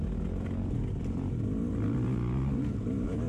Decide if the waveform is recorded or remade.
recorded